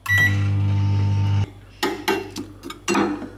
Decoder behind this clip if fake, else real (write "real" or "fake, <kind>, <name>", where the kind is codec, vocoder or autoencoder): real